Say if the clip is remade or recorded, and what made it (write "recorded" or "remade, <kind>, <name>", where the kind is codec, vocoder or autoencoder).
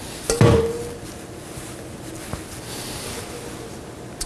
recorded